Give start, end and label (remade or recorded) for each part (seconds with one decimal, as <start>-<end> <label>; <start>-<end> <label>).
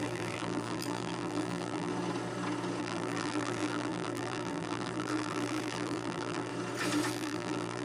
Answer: 0.0-1.9 remade; 1.9-2.8 recorded; 2.8-6.5 remade; 6.5-7.1 recorded; 7.1-7.8 remade